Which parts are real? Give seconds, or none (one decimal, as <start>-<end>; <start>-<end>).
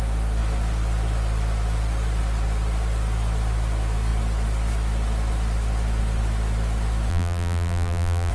0.0-7.1